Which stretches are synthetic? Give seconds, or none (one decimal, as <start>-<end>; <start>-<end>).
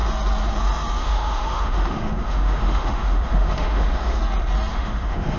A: 1.0-4.2; 4.7-5.4